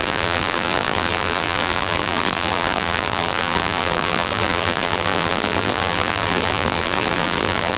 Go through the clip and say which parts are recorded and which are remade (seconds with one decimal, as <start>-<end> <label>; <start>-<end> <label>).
0.0-7.8 remade